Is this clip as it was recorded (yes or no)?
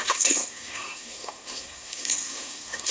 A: no